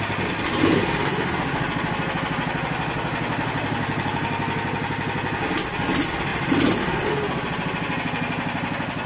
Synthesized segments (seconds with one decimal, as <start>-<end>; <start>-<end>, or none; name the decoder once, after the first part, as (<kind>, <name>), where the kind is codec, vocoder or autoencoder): 6.3-7.1 (vocoder, BigVGAN v2)